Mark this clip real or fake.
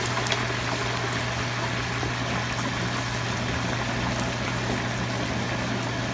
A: real